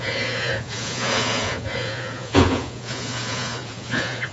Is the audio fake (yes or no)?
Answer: yes